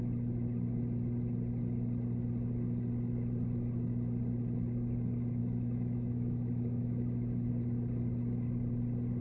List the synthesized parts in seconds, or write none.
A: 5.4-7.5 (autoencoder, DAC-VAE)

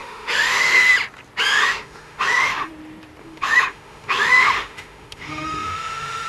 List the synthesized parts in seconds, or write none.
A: 0.0-0.9 (autoencoder, DAC-VAE); 1.5-2.7; 3.2-6.3

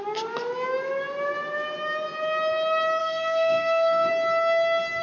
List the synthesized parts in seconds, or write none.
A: 3.0-4.1 (autoencoder, DAC-VAE)